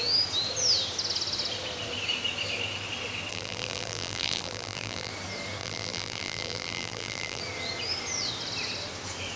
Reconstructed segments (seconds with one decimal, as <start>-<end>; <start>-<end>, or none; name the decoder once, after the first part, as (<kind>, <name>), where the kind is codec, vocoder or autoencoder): 3.3-5.1 (vocoder, BigVGAN v2); 5.6-7.4